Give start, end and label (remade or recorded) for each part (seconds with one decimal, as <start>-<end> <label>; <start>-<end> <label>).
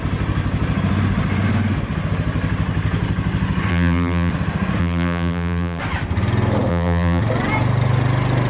0.0-3.7 recorded; 3.7-4.3 remade; 4.3-4.8 recorded; 4.8-5.8 remade; 5.8-6.7 recorded; 6.7-7.2 remade; 7.2-8.5 recorded